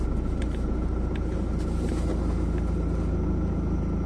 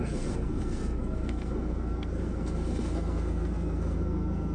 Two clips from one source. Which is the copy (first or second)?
second